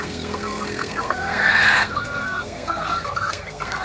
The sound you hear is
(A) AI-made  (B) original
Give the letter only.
A